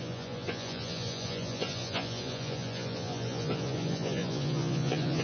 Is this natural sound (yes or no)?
no